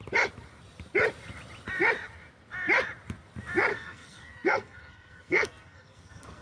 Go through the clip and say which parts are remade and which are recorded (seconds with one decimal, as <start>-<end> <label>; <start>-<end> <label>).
0.0-3.7 recorded; 3.7-6.4 remade